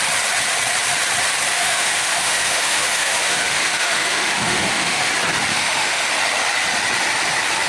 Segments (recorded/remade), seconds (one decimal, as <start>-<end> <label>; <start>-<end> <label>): 0.0-1.5 recorded; 1.5-5.1 remade; 5.1-5.5 recorded; 5.5-6.1 remade; 6.1-7.7 recorded